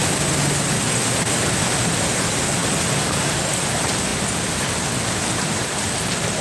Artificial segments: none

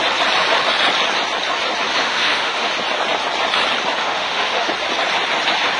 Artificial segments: 2.0-2.7 (autoencoder, DAC-VAE); 4.0-4.7

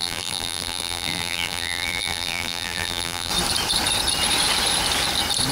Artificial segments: 0.0-3.3 (vocoder, BigVGAN v2)